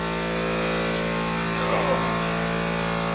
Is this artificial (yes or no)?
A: no